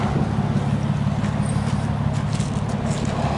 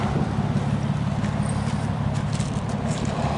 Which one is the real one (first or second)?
first